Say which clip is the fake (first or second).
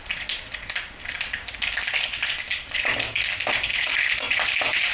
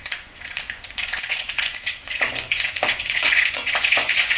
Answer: second